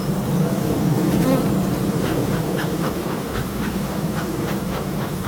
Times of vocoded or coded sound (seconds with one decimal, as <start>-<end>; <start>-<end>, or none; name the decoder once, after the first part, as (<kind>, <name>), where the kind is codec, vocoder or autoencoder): 0.4-1.1 (codec, DAC); 1.9-5.3